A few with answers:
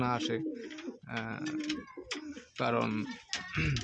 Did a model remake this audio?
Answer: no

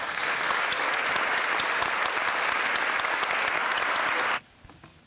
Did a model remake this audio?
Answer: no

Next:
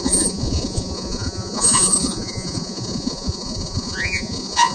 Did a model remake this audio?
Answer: yes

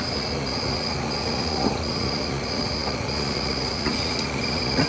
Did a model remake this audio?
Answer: yes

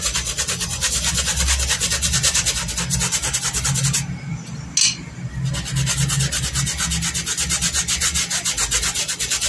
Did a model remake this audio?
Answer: no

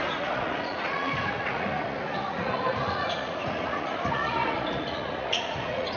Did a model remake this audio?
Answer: yes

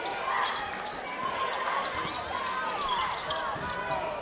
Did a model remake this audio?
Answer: no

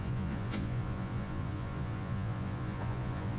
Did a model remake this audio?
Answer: yes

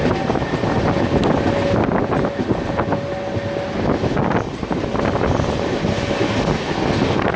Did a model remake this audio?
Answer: no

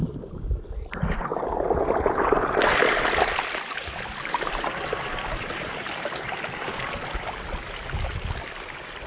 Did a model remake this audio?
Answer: no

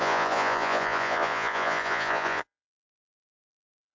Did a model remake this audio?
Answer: yes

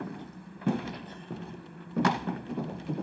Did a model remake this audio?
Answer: no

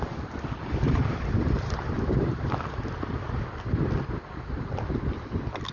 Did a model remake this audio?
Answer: no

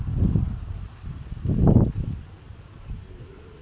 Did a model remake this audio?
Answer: no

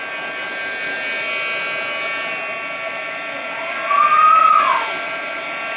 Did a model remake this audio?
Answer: no